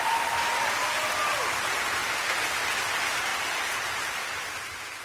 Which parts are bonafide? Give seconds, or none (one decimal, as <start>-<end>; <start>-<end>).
0.0-5.0